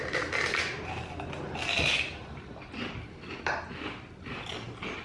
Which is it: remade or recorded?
recorded